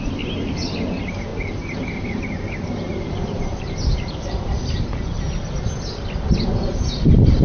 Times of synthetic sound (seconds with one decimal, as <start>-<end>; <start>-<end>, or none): 1.3-5.2